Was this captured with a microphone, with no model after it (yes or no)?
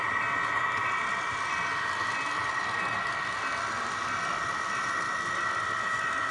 yes